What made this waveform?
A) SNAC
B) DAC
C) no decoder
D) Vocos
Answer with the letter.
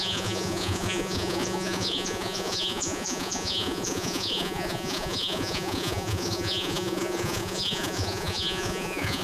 D